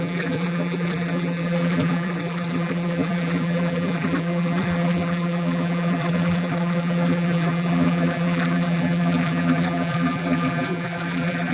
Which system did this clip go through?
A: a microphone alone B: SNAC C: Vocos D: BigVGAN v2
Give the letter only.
D